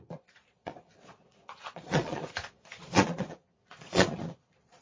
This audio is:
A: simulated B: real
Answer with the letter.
A